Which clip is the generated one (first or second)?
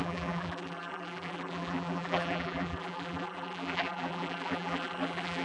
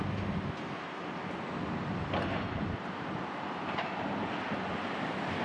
first